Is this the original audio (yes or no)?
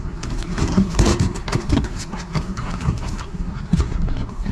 no